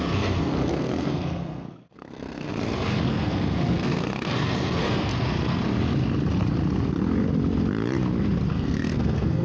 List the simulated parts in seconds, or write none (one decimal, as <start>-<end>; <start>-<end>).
0.0-2.5; 3.1-5.1; 8.5-9.4